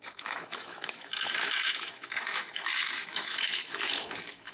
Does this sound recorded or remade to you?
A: remade